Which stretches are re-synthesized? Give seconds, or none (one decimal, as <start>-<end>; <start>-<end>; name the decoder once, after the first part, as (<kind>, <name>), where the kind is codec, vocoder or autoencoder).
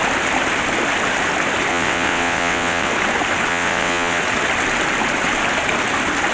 1.7-2.9 (vocoder, WaveNeXt); 3.5-4.2